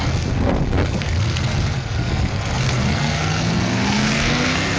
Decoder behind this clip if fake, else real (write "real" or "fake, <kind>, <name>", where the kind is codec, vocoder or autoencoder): fake, codec, SNAC